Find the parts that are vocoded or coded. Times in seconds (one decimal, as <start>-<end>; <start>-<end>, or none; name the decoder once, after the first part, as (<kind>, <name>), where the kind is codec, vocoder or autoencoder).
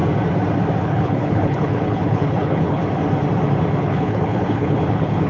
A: 0.8-2.8 (codec, HILCodec); 3.8-5.3